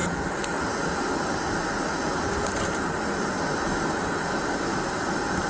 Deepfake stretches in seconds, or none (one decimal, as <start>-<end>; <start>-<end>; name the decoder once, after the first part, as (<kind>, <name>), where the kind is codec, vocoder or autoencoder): none